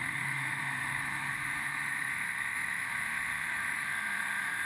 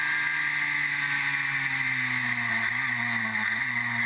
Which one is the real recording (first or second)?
second